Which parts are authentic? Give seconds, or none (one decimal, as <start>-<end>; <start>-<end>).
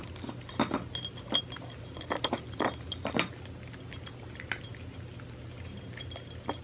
0.0-6.6